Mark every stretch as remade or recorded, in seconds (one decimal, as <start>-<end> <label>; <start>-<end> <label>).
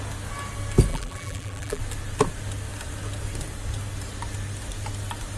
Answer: 0.0-0.9 recorded; 0.9-1.8 remade; 1.8-5.4 recorded